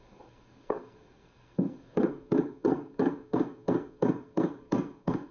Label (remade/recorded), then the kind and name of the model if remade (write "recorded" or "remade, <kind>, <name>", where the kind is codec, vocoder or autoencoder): remade, codec, SNAC